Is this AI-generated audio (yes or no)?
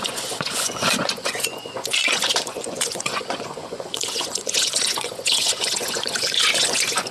yes